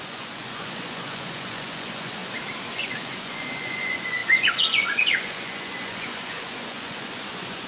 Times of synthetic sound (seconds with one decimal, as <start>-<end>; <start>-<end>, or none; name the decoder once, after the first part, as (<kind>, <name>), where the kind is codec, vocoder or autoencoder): 0.0-2.2 (vocoder, Vocos); 2.7-7.7